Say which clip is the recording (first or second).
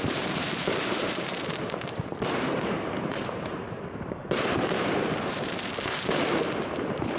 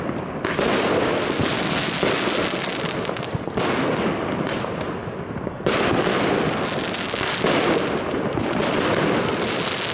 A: second